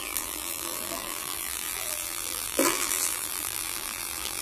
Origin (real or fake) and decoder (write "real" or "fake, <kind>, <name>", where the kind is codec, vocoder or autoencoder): fake, vocoder, BigVGAN v2